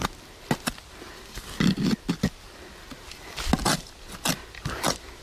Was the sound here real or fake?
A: real